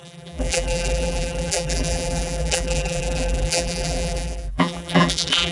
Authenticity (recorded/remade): remade